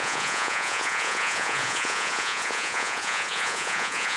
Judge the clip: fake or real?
fake